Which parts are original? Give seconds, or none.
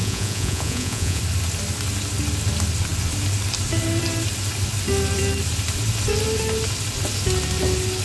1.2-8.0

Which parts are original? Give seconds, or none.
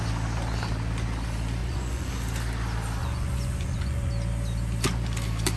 0.0-1.6; 2.1-3.0; 4.1-5.6